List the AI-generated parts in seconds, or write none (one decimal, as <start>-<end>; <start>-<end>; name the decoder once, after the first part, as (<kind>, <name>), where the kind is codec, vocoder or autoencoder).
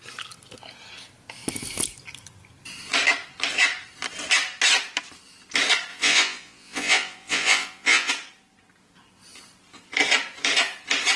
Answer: 5.9-8.1 (vocoder, Vocos)